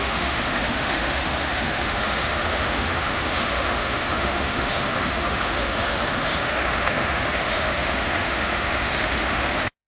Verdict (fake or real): fake